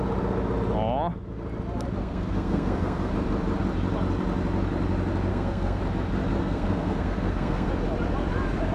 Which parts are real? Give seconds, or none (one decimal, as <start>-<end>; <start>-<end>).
0.0-2.0; 3.1-5.3; 5.8-6.4; 7.7-8.7